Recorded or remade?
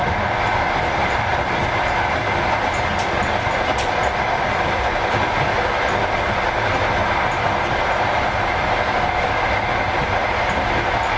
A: recorded